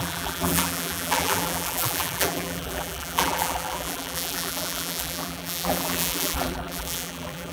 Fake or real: fake